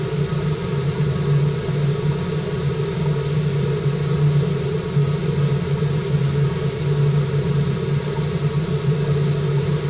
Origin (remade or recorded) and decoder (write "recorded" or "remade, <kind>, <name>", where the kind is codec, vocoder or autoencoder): recorded